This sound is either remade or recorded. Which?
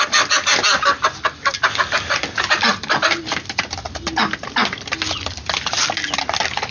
recorded